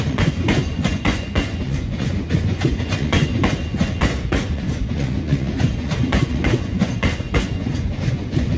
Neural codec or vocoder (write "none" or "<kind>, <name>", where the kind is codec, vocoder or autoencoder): vocoder, Vocos